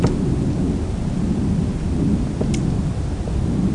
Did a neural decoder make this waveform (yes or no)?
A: no